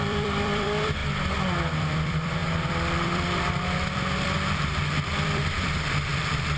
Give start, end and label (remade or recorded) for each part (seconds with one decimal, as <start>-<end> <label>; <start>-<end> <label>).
0.0-1.0 remade; 1.0-1.7 recorded; 1.7-6.6 remade